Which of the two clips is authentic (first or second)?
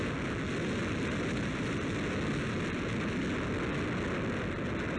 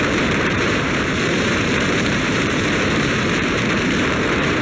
first